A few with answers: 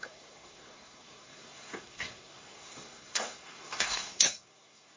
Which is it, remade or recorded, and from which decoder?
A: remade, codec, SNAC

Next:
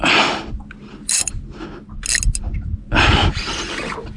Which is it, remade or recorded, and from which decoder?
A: recorded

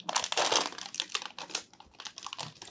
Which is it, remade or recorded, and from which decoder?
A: recorded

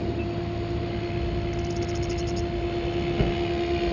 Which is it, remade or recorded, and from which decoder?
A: recorded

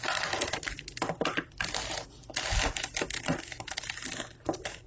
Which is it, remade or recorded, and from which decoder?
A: recorded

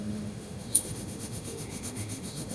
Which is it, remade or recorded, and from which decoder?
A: remade, autoencoder, DAC-VAE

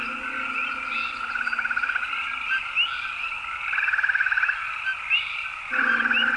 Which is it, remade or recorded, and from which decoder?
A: recorded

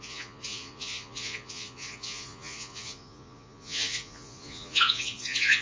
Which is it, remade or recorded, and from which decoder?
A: remade, vocoder, Vocos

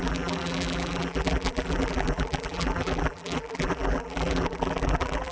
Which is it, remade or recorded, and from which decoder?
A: remade, vocoder, BigVGAN v2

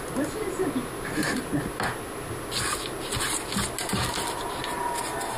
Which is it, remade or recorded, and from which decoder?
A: recorded